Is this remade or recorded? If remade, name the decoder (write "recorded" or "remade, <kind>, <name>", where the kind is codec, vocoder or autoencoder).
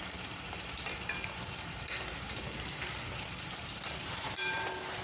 remade, vocoder, BigVGAN v2